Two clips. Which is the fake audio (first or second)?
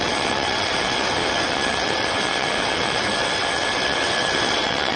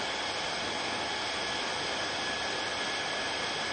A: first